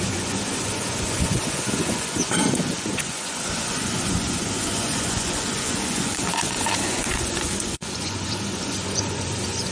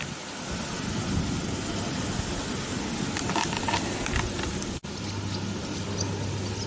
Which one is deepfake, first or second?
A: first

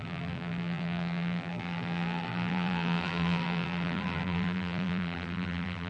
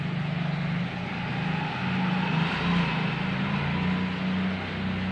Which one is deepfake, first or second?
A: first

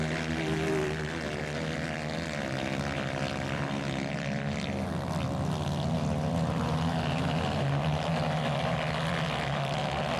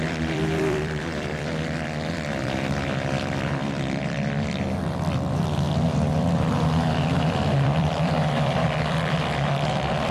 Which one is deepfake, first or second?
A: second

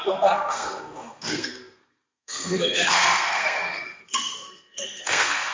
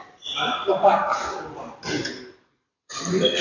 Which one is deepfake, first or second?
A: first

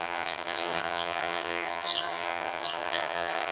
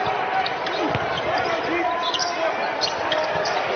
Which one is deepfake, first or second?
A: first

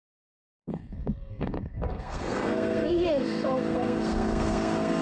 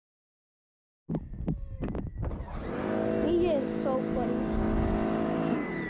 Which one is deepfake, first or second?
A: first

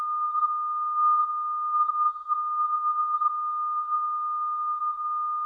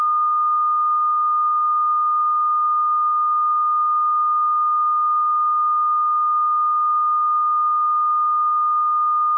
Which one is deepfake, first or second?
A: first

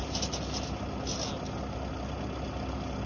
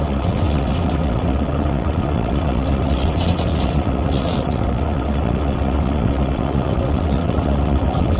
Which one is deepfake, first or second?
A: second